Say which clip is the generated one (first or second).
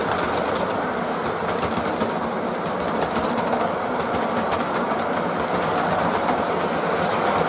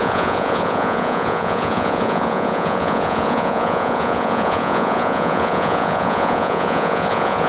second